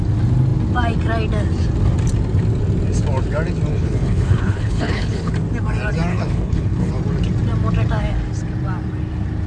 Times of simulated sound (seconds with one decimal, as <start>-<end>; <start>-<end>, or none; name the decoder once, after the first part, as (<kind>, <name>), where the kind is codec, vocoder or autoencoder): 3.7-5.3 (codec, HILCodec); 6.1-6.9